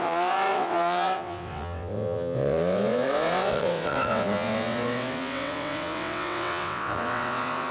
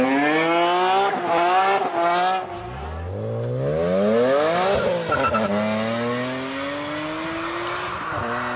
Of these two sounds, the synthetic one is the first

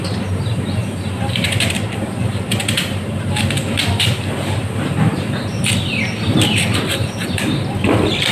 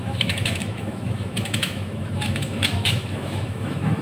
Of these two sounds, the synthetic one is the second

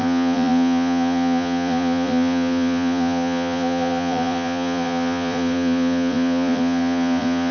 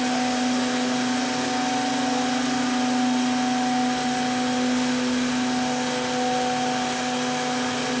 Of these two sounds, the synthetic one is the first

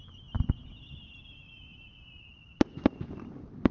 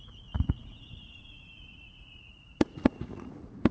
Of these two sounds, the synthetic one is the second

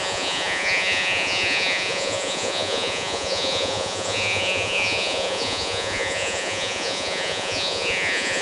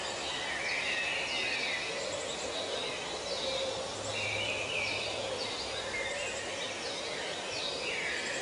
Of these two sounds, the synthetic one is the first